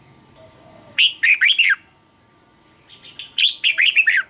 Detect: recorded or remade recorded